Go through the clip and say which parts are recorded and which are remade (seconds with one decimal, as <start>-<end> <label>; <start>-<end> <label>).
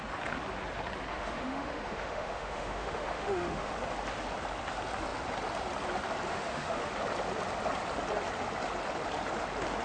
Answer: 0.0-1.1 recorded; 1.1-3.7 remade; 3.7-6.3 recorded; 6.3-6.9 remade; 6.9-9.8 recorded